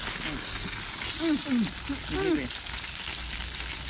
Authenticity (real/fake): real